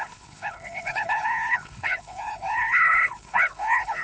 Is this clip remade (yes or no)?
yes